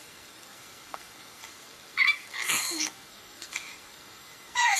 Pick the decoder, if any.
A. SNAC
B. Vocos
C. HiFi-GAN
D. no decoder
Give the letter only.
A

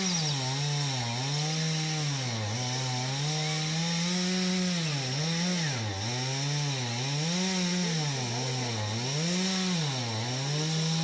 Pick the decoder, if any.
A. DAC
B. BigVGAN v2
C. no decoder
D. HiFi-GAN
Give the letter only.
C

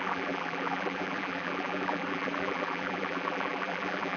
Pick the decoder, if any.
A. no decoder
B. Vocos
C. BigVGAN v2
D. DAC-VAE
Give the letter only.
C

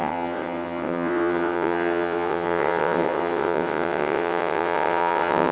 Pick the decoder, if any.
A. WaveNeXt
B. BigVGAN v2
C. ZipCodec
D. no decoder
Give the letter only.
A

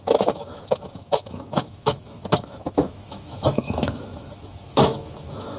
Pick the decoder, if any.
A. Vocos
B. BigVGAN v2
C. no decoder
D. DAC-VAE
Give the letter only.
D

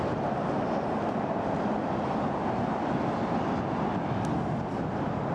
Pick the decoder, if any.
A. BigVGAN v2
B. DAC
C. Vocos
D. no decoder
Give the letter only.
D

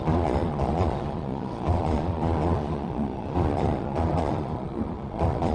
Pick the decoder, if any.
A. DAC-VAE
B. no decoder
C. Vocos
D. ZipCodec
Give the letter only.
C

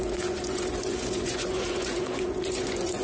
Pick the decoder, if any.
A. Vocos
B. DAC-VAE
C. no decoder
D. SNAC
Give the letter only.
A